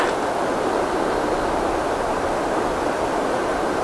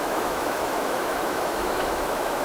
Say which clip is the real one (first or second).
first